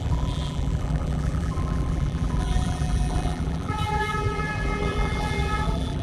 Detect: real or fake fake